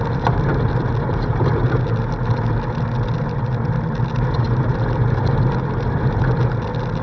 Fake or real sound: real